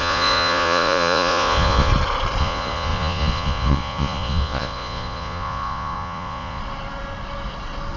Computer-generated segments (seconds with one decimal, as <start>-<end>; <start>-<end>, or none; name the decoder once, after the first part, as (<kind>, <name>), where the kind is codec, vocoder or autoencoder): 0.0-1.9 (vocoder, Vocos); 2.4-6.6